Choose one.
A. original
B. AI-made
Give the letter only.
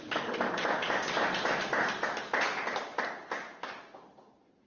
A